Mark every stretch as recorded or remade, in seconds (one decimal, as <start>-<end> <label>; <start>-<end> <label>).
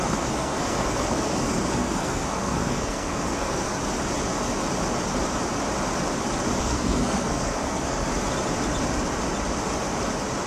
0.0-3.7 remade; 3.7-6.6 recorded; 6.6-8.1 remade; 8.1-10.5 recorded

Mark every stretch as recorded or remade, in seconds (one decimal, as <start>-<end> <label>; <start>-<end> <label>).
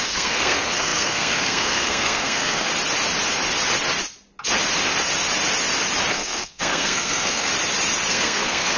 0.0-2.7 remade; 2.7-6.1 recorded; 6.1-7.5 remade; 7.5-8.1 recorded; 8.1-8.8 remade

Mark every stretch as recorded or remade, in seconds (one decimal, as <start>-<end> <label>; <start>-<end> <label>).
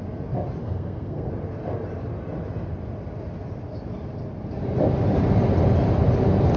0.0-0.6 recorded; 0.6-1.3 remade; 1.3-6.6 recorded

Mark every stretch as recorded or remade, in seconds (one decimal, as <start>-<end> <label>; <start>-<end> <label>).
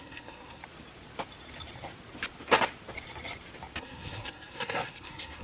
0.0-0.6 remade; 0.6-3.8 recorded; 3.8-5.4 remade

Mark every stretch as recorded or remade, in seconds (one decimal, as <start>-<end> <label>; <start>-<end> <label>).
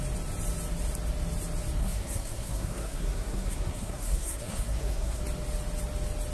0.0-1.8 recorded; 1.8-5.2 remade; 5.2-6.3 recorded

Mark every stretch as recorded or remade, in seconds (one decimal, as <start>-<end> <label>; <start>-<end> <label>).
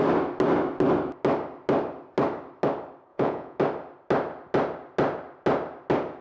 0.0-3.1 recorded; 3.1-3.6 remade; 3.6-6.2 recorded